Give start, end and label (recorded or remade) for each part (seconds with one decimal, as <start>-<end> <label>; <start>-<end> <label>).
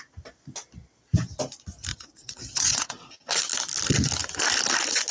0.0-1.9 recorded; 1.9-3.1 remade; 3.1-5.1 recorded